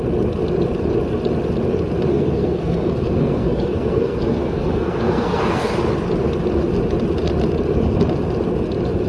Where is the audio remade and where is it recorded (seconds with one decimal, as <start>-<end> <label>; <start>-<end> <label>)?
0.0-2.1 recorded; 2.1-5.7 remade; 5.7-9.1 recorded